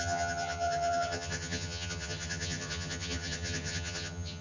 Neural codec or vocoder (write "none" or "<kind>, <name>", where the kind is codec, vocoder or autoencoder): vocoder, HiFi-GAN